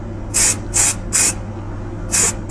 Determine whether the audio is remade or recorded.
recorded